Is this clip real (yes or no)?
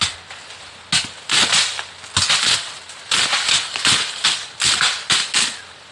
yes